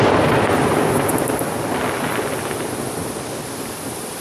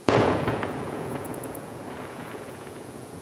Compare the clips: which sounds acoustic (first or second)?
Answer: first